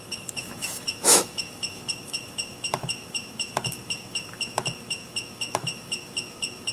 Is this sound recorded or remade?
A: remade